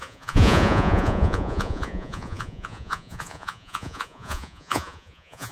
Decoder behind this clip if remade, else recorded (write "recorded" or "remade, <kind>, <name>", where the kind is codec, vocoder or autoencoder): remade, vocoder, Vocos